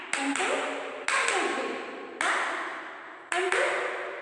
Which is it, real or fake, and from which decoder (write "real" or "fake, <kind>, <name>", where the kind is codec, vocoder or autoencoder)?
real